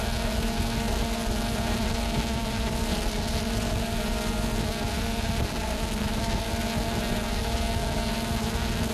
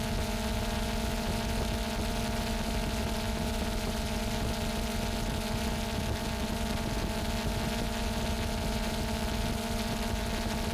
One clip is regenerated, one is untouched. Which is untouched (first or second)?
second